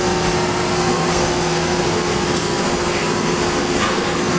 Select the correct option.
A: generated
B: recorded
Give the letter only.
A